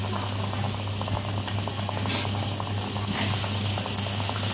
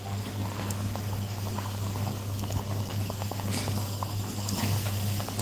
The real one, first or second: first